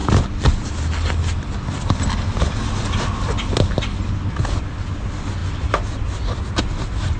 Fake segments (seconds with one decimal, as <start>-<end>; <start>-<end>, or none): none